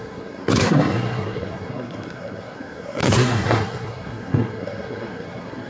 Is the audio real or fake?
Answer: fake